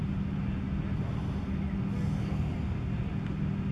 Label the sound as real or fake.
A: real